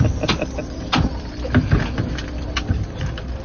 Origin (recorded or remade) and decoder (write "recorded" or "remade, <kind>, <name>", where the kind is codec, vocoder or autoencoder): recorded